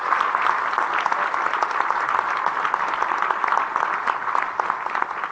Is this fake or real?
real